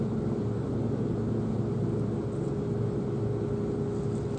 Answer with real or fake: real